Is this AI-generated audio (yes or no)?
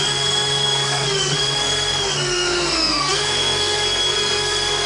yes